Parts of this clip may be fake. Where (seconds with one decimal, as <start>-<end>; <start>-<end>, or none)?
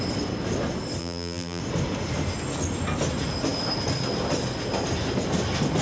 1.0-1.6